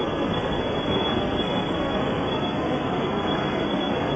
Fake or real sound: fake